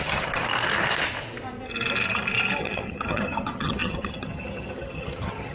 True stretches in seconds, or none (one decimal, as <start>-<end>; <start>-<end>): 0.4-2.6